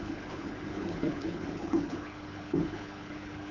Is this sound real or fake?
fake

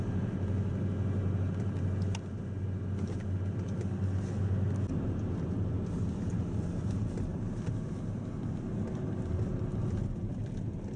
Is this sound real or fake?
real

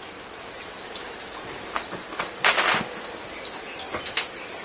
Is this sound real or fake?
real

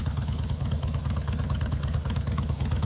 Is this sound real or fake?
fake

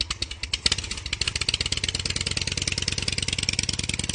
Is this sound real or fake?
real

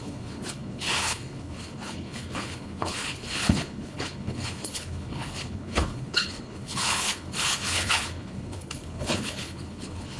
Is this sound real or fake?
fake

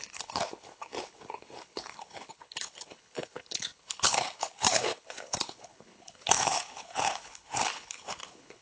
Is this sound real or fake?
fake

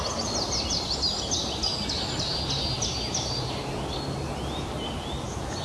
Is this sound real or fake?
real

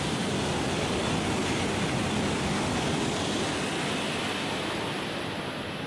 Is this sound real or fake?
real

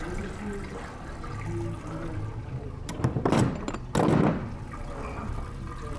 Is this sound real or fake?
real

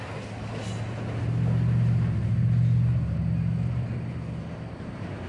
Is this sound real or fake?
real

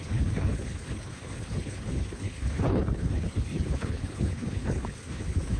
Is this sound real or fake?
fake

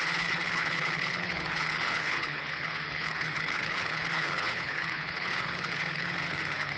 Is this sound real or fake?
fake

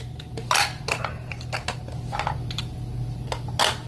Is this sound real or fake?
real